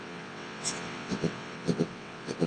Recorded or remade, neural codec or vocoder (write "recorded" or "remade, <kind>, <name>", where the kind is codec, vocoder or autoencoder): remade, vocoder, WaveNeXt